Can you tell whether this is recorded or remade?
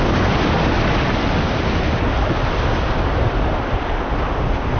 recorded